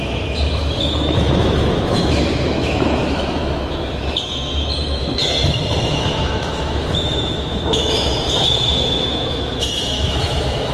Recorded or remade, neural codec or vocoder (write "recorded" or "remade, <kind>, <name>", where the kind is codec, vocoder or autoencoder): remade, autoencoder, DAC-VAE